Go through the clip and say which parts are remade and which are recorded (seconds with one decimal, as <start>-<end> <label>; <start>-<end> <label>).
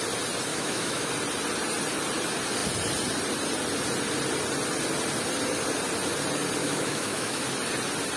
0.0-0.5 recorded; 0.5-1.1 remade; 1.1-6.6 recorded; 6.6-7.4 remade; 7.4-8.2 recorded